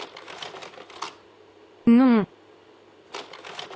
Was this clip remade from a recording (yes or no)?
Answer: no